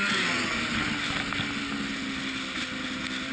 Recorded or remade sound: recorded